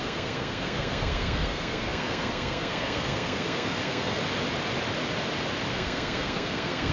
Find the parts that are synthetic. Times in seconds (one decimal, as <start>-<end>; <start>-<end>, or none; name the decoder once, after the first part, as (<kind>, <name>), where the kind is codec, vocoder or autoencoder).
0.0-4.2 (codec, SNAC); 5.7-6.9